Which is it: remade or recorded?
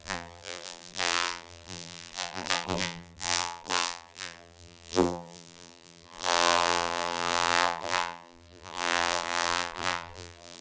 remade